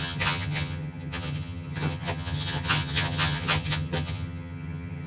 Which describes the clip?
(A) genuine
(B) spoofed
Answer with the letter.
B